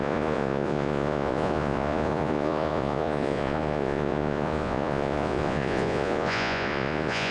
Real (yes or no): no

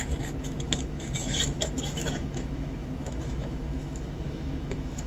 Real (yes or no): no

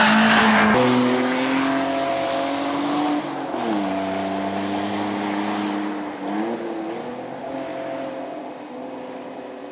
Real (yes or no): yes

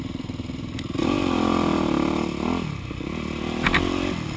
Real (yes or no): yes